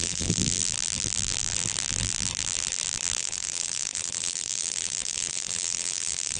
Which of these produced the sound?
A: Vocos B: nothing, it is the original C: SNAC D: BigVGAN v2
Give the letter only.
D